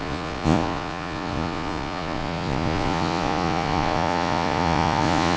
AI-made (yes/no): yes